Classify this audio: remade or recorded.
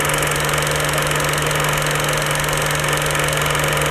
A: recorded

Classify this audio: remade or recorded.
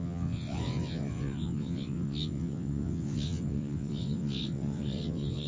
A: remade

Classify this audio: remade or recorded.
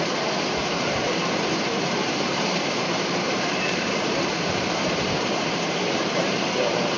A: remade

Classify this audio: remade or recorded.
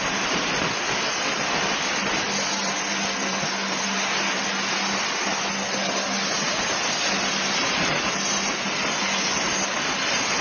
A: recorded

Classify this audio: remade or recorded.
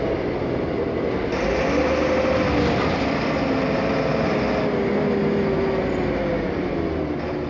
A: recorded